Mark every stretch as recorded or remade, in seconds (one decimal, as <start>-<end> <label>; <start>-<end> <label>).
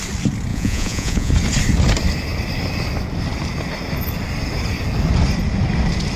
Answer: 0.0-0.5 recorded; 0.5-1.3 remade; 1.3-6.2 recorded